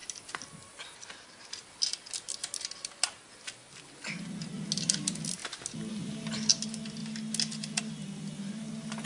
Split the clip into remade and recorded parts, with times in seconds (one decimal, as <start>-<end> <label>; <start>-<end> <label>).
0.0-9.1 recorded